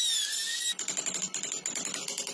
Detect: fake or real real